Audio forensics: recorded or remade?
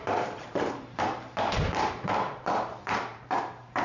remade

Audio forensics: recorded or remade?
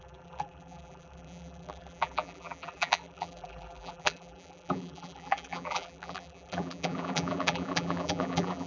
remade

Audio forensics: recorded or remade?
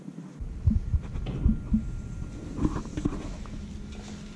recorded